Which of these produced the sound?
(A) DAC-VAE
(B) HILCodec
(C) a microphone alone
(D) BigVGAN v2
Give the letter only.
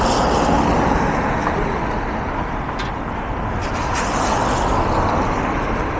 C